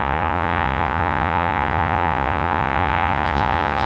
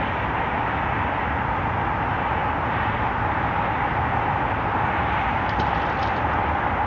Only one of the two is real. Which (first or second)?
second